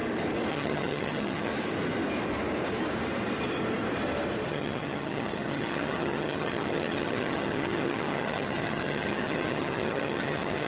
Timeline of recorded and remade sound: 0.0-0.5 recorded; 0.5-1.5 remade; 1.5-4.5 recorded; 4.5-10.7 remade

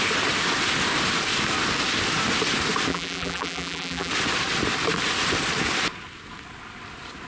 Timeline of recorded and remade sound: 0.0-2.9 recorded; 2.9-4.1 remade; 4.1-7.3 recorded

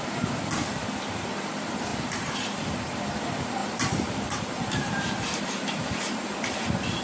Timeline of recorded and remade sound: 0.0-1.9 recorded; 1.9-2.6 remade; 2.6-3.6 recorded; 3.6-5.9 remade; 5.9-7.0 recorded

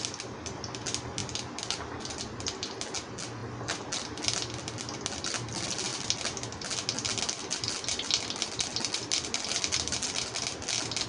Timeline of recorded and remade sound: 0.0-11.1 recorded

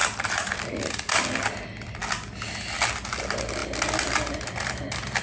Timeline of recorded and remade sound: 0.0-0.5 remade; 0.5-5.2 recorded

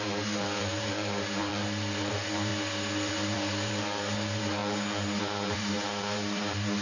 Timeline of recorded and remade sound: 0.0-1.5 remade; 1.5-2.1 recorded; 2.1-2.5 remade; 2.5-3.1 recorded; 3.1-4.6 remade; 4.6-5.2 recorded; 5.2-6.8 remade